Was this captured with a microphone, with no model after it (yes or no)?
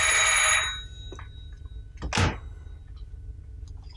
yes